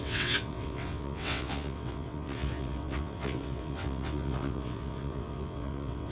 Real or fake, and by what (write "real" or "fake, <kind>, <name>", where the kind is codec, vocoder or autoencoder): fake, vocoder, WaveNeXt